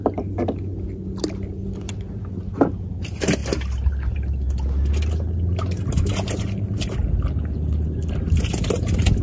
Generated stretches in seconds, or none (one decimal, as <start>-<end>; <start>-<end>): none